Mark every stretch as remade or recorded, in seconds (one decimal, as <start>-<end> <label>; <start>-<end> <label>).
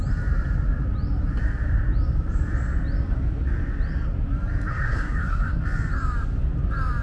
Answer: 0.0-4.7 recorded; 4.7-5.6 remade; 5.6-7.0 recorded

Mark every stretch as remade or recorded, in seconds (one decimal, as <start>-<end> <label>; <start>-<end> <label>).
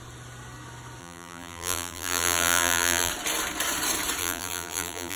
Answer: 0.0-1.0 recorded; 1.0-3.1 remade; 3.1-4.2 recorded; 4.2-5.2 remade